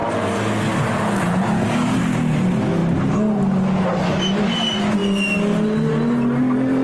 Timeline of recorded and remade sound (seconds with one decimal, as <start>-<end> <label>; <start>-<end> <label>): 0.0-6.8 recorded